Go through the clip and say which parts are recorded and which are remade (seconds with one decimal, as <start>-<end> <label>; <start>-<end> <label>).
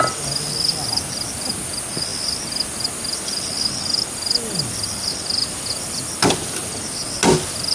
0.0-7.7 recorded